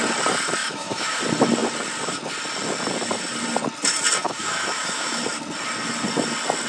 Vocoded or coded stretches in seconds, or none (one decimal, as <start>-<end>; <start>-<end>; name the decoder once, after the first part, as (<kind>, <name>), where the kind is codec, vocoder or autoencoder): 0.6-1.2 (autoencoder, DAC-VAE); 4.2-5.2